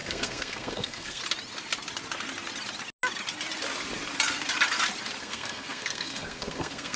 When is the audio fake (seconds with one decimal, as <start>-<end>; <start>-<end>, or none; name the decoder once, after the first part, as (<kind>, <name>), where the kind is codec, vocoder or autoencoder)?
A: 0.0-1.2 (codec, SNAC); 5.2-7.0